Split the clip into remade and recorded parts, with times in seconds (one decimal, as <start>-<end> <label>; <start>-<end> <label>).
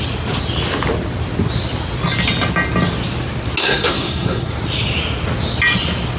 0.0-3.6 recorded; 3.6-4.5 remade; 4.5-6.2 recorded